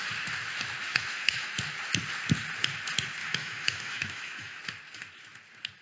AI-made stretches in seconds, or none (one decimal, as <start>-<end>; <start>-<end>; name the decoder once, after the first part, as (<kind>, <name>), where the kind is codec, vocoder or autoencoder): 0.9-1.5 (autoencoder, DAC-VAE); 3.2-4.6